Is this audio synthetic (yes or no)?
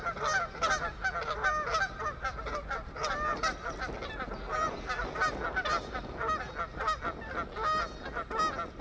no